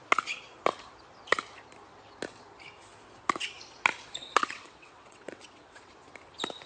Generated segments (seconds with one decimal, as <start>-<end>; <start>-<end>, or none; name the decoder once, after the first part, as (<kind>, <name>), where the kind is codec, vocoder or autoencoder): 4.2-5.9 (vocoder, WaveNeXt)